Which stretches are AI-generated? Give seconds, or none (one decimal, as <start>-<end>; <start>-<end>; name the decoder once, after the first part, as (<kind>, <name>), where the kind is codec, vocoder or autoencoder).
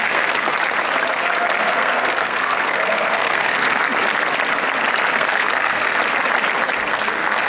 0.0-0.5 (codec, SNAC); 1.6-3.8; 5.1-6.0; 6.9-7.5